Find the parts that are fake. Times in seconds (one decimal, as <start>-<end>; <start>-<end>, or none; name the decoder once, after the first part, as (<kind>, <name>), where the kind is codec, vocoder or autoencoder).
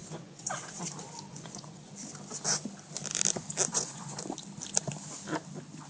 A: 0.0-0.8 (vocoder, Vocos); 1.3-1.9; 3.7-4.2